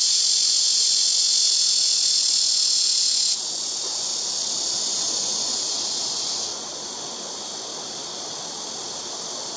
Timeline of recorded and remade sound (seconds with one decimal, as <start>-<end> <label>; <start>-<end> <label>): 0.0-4.1 remade; 4.1-4.8 recorded; 4.8-7.7 remade; 7.7-9.6 recorded